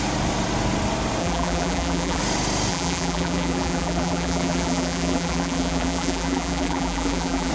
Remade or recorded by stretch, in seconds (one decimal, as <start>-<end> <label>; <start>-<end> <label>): 0.0-1.2 recorded; 1.2-2.2 remade; 2.2-2.7 recorded; 2.7-7.5 remade